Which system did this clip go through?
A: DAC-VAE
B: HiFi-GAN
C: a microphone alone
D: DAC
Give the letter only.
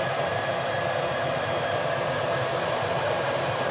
C